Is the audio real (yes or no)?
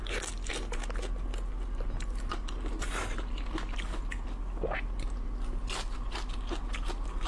yes